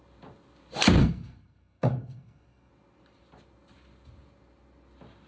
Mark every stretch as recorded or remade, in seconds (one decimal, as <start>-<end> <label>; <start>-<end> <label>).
0.0-1.0 recorded; 1.0-2.7 remade; 2.7-5.3 recorded